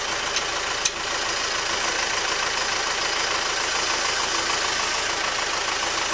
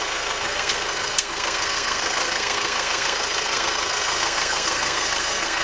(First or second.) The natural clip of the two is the first